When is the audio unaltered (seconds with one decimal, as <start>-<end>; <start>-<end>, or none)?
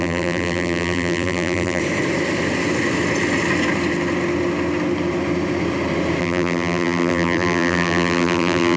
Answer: 1.8-6.2